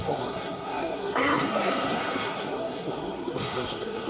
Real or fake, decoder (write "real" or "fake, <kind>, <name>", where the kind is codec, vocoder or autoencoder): fake, codec, SNAC